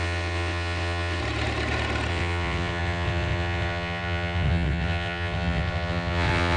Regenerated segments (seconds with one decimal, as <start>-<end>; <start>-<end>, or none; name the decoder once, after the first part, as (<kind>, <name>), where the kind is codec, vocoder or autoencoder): 0.0-1.2 (vocoder, WaveNeXt); 2.1-6.6